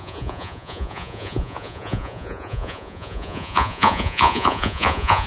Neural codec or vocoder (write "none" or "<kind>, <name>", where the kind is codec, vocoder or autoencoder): vocoder, Vocos